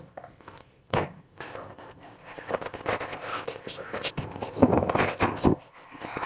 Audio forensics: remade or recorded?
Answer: remade